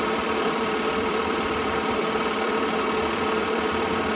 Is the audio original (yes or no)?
no